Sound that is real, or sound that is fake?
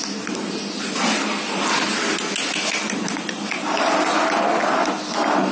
real